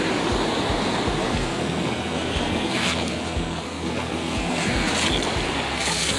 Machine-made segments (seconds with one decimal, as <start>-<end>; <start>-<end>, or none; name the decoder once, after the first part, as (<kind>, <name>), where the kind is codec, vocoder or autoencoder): 1.2-4.9 (codec, SNAC); 5.7-6.2